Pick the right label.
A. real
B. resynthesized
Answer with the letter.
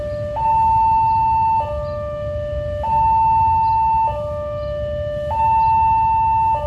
A